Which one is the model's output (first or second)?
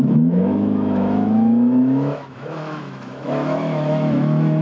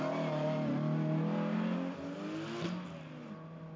first